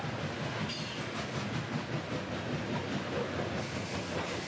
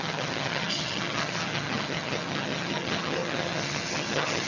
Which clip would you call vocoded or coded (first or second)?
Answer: second